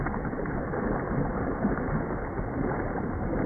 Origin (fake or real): real